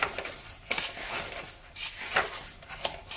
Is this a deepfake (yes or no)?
no